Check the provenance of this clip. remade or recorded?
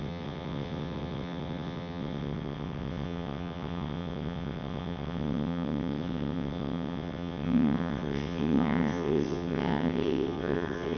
remade